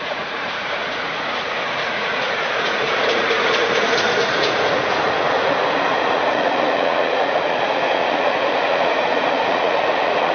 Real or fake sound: fake